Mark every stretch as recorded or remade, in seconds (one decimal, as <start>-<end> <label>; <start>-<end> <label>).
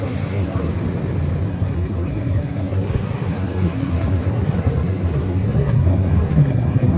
0.0-0.7 remade; 0.7-1.5 recorded; 1.5-7.0 remade